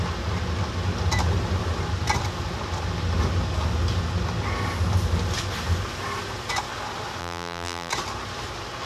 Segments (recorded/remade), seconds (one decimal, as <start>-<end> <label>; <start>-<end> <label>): 0.0-7.2 recorded; 7.2-7.9 remade; 7.9-8.9 recorded